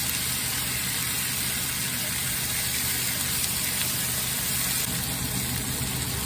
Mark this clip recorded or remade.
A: recorded